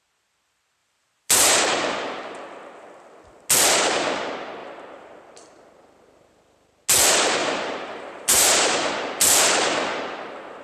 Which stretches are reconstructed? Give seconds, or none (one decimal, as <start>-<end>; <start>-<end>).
0.8-1.6; 4.6-5.2; 7.4-8.9